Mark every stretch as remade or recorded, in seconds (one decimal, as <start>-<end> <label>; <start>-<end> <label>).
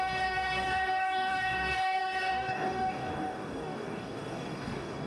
0.0-5.1 remade